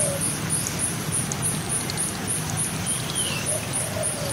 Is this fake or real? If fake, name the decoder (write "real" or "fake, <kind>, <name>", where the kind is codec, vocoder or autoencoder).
real